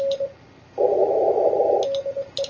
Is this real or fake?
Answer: real